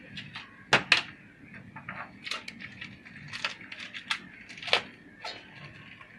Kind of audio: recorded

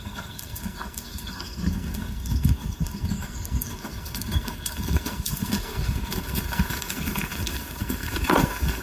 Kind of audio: remade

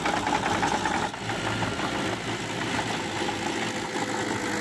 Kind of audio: recorded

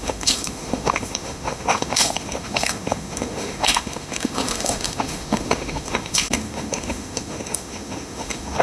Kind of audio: remade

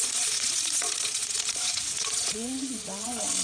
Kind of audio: remade